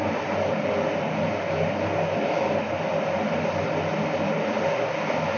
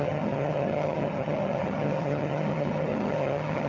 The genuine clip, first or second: first